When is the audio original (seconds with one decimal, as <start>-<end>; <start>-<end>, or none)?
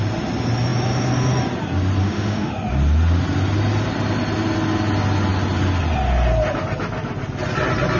0.0-2.0; 2.5-8.0